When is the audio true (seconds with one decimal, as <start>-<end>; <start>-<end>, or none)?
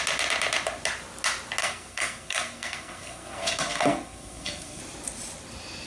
0.0-1.6; 4.8-5.9